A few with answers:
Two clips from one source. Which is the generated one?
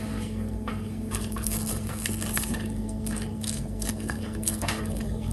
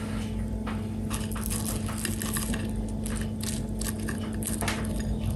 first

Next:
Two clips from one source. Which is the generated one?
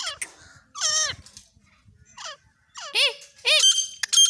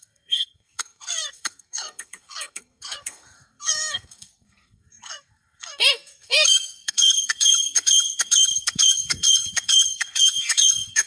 second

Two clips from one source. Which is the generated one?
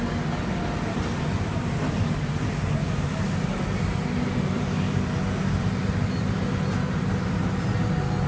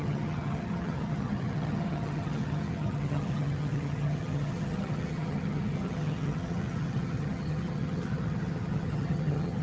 second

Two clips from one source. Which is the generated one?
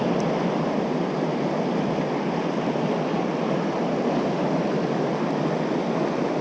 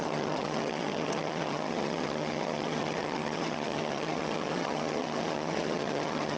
second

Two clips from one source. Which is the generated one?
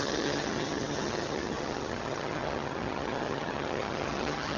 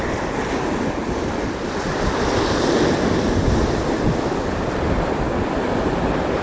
first